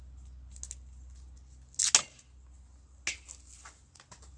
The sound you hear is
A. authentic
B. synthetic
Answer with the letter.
A